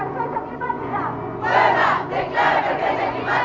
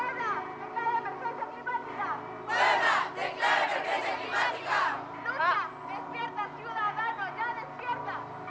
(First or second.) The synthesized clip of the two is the first